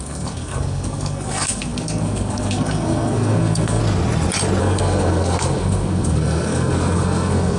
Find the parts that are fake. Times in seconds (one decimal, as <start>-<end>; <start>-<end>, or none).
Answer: 0.0-3.8; 4.6-7.6